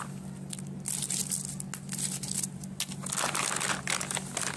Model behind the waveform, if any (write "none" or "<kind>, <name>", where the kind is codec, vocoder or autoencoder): none